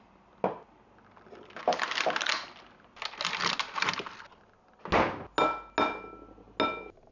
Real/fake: real